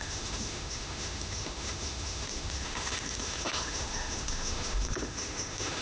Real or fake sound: fake